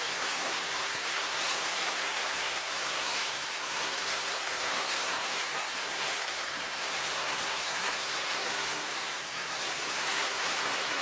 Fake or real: fake